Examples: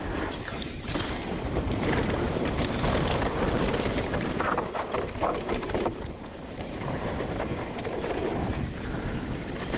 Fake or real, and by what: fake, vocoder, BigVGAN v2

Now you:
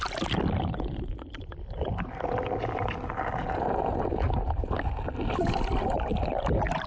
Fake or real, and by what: real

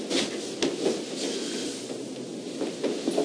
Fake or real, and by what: real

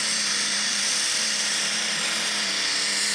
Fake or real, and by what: fake, vocoder, BigVGAN v2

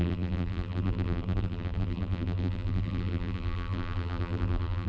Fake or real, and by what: fake, vocoder, BigVGAN v2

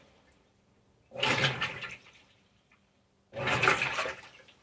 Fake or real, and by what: fake, vocoder, BigVGAN v2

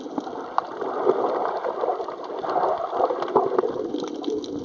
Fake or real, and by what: real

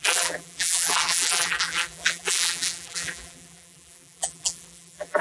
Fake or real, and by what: fake, vocoder, BigVGAN v2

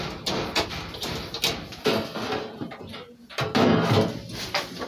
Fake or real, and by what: real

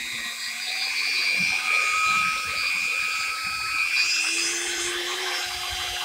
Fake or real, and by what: fake, vocoder, BigVGAN v2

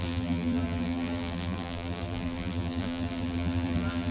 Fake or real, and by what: fake, vocoder, BigVGAN v2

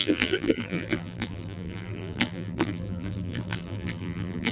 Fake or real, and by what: fake, vocoder, BigVGAN v2